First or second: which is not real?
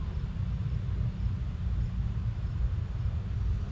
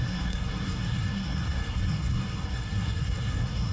second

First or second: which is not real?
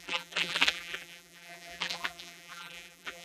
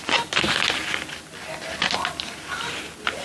first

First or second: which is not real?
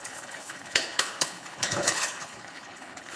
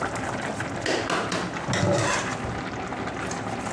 first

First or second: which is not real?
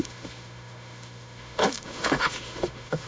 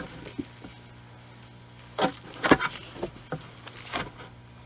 first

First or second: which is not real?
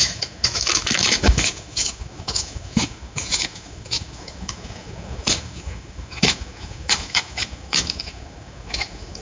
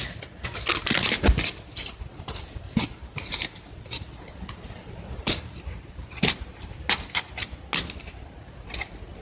first